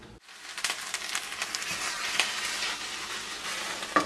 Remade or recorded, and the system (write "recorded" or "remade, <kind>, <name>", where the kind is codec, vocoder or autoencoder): recorded